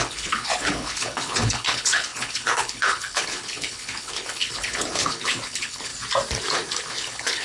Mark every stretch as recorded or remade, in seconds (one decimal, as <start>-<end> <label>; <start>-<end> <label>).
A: 0.0-5.9 remade; 5.9-6.9 recorded; 6.9-7.4 remade